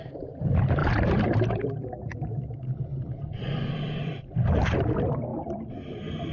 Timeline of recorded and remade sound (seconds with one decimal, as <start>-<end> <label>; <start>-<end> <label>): 0.0-6.3 remade